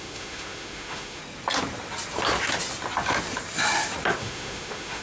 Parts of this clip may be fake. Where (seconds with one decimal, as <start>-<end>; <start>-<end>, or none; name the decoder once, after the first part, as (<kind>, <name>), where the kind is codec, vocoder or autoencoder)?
0.0-1.2 (autoencoder, DAC-VAE); 4.2-5.0